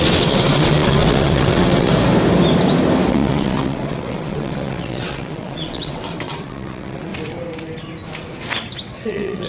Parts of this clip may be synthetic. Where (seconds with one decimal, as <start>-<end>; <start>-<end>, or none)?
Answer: 0.0-1.9; 3.1-7.1; 8.8-9.5